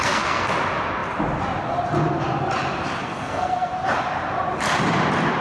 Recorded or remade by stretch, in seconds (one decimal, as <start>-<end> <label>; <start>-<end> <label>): 0.0-0.5 remade; 0.5-3.0 recorded; 3.0-3.7 remade; 3.7-5.4 recorded